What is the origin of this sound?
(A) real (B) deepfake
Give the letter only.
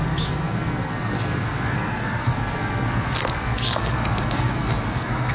B